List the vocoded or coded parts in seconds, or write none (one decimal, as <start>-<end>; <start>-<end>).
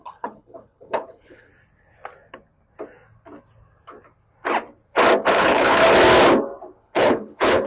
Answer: 0.0-1.5; 5.3-5.8; 6.8-7.7